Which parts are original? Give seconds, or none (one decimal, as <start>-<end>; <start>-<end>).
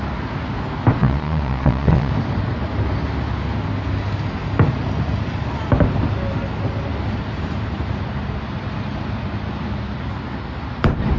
0.0-1.0; 2.1-11.2